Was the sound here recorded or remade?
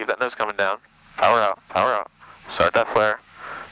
remade